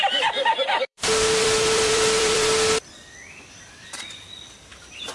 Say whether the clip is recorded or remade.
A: remade